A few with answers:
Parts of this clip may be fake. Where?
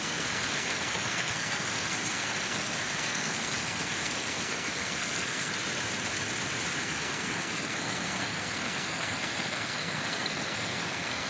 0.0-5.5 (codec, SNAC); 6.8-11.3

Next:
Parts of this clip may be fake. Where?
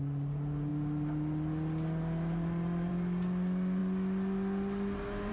none